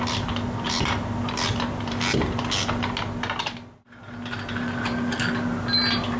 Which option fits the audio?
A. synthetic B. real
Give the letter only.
B